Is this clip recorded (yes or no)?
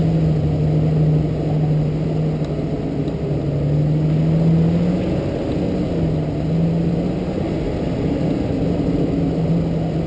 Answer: yes